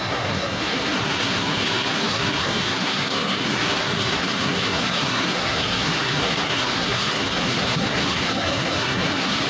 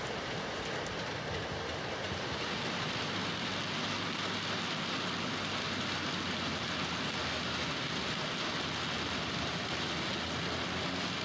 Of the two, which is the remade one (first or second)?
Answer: first